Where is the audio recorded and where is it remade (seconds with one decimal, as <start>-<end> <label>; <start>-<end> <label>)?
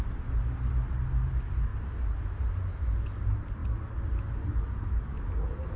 0.0-5.8 recorded